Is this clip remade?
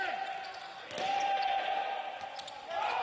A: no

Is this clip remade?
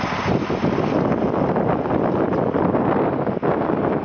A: no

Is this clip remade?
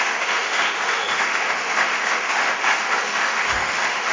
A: yes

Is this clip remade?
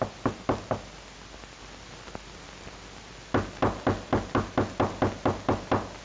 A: no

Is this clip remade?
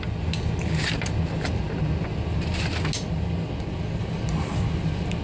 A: no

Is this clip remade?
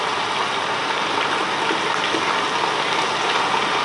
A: no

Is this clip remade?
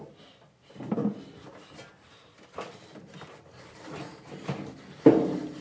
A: no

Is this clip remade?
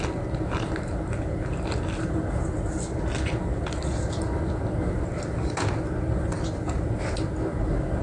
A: no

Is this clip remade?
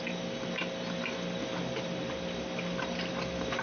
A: no